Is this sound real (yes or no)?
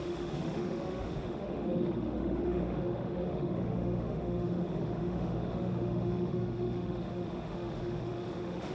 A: no